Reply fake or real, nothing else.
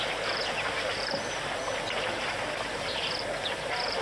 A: fake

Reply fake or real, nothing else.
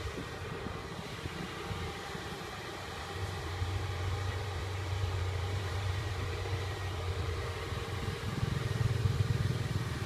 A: fake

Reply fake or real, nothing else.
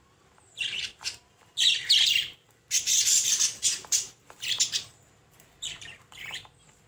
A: fake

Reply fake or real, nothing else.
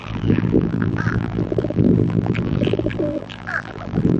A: fake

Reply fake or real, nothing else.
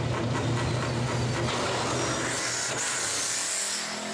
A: real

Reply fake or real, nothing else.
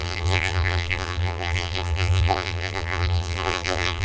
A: fake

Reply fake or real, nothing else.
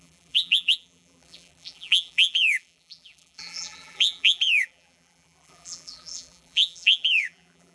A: fake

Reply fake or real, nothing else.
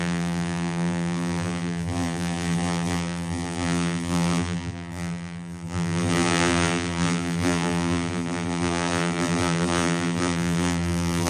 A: fake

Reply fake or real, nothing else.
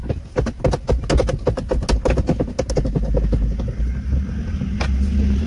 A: real